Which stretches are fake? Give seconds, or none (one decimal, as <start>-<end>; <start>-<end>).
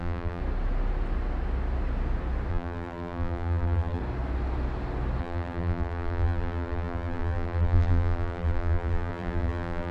0.0-0.4; 2.5-4.0; 5.2-9.9